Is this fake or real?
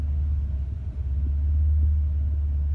real